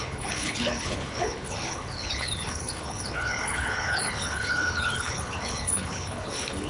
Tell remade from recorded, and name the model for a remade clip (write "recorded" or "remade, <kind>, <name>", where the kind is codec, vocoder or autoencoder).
remade, codec, HILCodec